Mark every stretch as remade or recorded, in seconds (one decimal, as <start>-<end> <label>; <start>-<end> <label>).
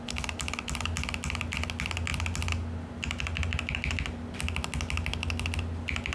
0.0-6.1 recorded